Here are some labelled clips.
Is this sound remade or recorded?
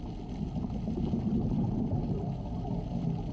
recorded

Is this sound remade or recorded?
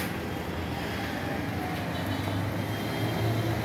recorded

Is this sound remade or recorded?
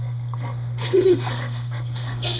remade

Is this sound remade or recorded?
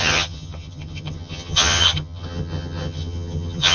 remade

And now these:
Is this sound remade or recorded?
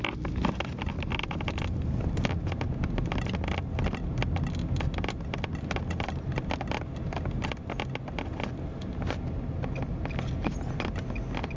recorded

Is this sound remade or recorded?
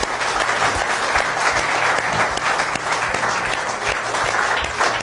recorded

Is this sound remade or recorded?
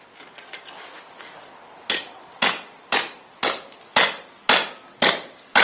recorded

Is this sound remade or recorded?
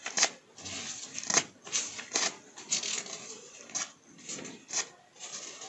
recorded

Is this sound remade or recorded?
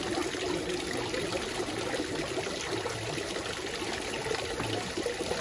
recorded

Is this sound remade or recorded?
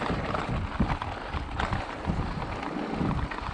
recorded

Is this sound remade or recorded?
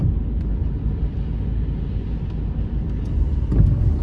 recorded